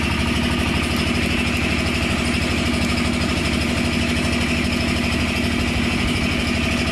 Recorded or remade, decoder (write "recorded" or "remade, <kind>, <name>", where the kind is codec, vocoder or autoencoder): recorded